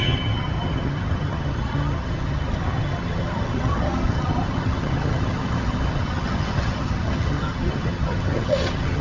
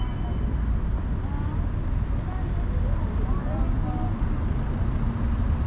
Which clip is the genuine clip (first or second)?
second